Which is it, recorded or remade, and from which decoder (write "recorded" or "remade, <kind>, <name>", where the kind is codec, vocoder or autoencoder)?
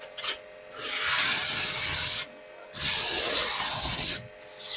recorded